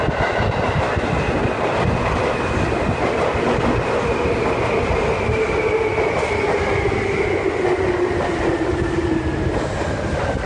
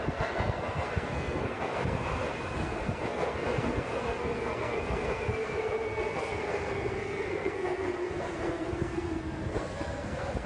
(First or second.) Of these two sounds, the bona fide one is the first